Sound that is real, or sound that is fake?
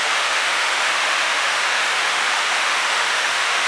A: fake